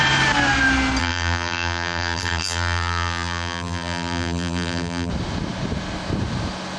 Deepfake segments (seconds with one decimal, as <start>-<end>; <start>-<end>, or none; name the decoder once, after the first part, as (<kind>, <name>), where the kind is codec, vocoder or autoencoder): 1.0-5.1 (vocoder, BigVGAN v2)